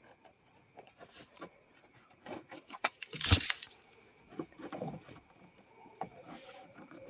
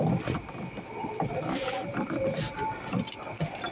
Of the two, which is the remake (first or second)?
first